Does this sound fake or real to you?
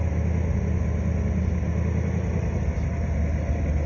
real